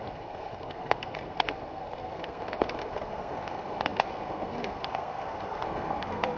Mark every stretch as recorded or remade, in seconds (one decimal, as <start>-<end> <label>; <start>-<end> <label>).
0.0-6.4 remade